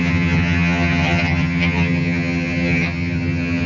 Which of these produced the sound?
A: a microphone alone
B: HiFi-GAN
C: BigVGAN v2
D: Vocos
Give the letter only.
B